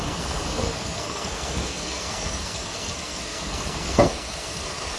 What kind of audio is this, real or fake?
fake